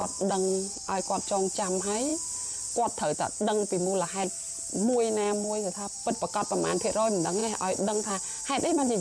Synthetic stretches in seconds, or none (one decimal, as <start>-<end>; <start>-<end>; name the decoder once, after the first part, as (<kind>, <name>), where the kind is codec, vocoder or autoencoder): 0.0-1.0 (vocoder, Vocos); 7.4-8.1